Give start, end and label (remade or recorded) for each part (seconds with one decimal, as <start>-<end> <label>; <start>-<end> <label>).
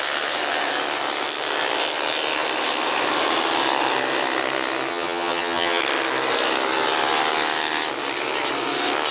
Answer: 0.0-4.9 recorded; 4.9-5.8 remade; 5.8-9.1 recorded